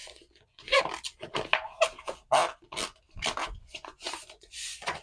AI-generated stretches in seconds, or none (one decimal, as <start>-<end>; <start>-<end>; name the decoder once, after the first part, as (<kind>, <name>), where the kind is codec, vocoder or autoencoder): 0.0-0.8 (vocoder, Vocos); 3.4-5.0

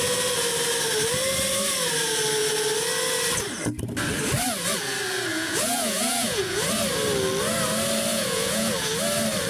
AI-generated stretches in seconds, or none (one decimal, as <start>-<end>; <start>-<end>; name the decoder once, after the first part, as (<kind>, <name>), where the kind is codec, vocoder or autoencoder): 5.3-6.7 (vocoder, Vocos); 8.1-9.0

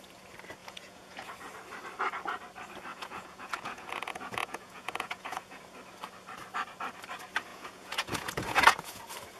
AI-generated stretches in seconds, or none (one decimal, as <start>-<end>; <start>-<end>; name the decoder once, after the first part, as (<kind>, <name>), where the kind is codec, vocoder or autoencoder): 0.6-1.3 (vocoder, Vocos); 2.9-5.6; 7.5-9.0

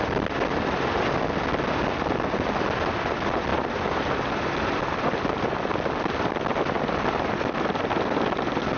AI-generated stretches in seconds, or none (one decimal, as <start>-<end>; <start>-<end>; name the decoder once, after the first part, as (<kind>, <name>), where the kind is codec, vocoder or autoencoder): none